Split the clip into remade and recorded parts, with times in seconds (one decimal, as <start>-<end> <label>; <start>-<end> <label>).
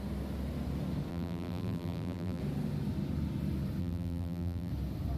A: 0.0-1.1 recorded; 1.1-2.4 remade; 2.4-3.8 recorded; 3.8-4.7 remade; 4.7-5.2 recorded